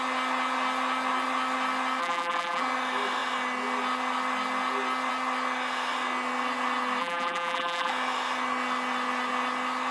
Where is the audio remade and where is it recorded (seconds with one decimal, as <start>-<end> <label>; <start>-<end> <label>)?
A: 0.0-2.0 recorded; 2.0-2.6 remade; 2.6-7.0 recorded; 7.0-7.9 remade; 7.9-9.9 recorded